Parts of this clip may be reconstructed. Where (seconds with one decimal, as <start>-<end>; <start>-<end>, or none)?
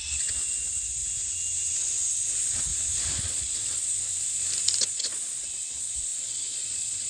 0.0-1.0; 2.1-2.7; 3.2-4.1; 4.8-7.1